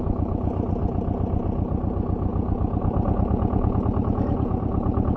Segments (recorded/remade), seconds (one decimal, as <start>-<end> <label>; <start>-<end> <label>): 0.0-5.2 recorded